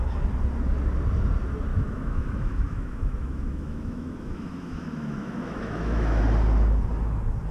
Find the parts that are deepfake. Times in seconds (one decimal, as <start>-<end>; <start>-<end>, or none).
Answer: 1.7-6.2